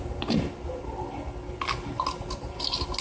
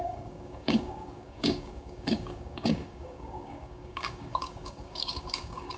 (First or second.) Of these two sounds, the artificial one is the second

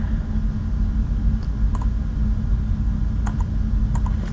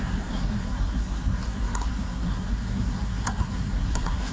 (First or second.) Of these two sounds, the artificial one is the second